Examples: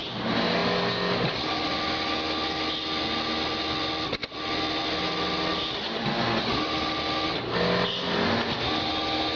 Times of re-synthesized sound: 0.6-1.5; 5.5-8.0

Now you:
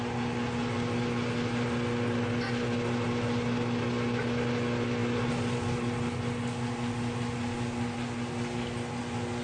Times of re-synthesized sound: none

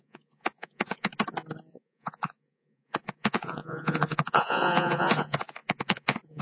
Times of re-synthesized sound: 0.0-1.1; 1.7-6.4